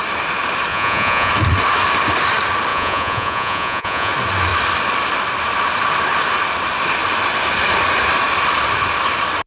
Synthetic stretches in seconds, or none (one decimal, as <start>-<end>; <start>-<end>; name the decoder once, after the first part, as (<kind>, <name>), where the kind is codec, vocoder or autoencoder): 0.7-1.3 (vocoder, Vocos); 2.7-4.1

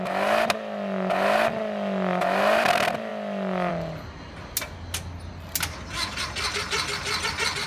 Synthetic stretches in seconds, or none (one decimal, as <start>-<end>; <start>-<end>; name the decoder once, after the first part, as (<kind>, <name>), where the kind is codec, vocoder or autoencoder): none

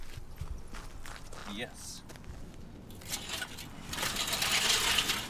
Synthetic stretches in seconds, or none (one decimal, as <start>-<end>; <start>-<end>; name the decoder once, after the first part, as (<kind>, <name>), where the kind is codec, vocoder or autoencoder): none

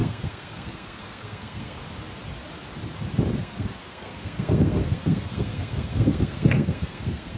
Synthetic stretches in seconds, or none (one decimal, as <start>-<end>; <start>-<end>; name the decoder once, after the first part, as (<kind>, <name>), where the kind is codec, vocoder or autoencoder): 0.0-1.8 (codec, SNAC); 3.4-7.4

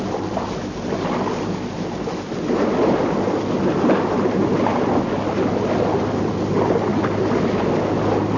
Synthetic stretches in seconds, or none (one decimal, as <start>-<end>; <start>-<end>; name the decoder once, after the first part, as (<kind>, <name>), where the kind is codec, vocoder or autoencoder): none